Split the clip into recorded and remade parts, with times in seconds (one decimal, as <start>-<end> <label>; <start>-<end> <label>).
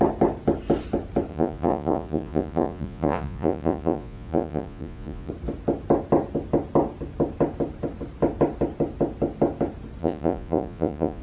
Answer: 0.0-1.3 recorded; 1.3-5.3 remade; 5.3-10.0 recorded; 10.0-11.2 remade